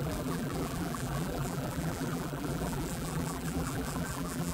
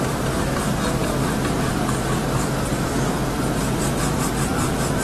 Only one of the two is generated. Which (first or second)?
first